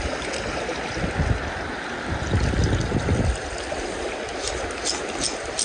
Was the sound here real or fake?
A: real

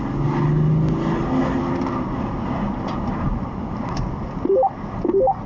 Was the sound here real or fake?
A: real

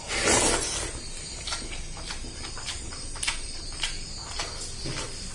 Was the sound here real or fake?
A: real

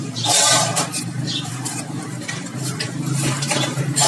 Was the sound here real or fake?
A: fake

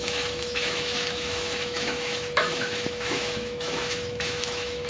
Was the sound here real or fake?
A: fake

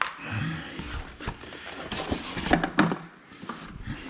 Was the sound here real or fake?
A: real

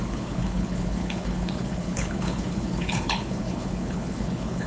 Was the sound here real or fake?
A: fake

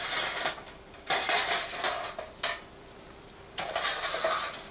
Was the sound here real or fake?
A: real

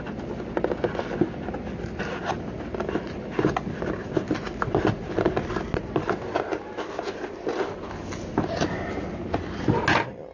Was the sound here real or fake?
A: real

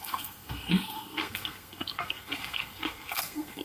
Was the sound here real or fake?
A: fake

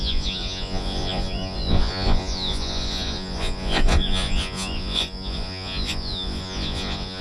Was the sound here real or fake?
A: fake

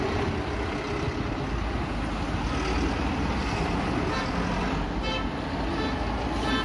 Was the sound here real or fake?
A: real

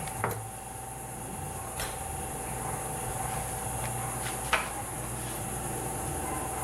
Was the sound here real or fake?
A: real